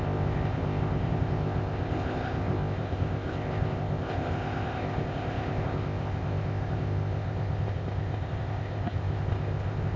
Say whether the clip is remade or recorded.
remade